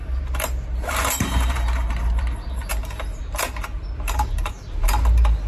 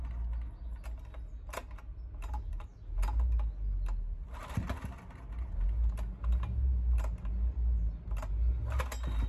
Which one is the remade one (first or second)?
first